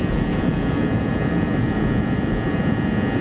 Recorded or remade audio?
remade